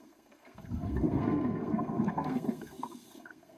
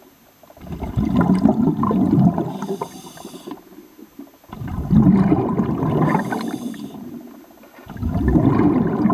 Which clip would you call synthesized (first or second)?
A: first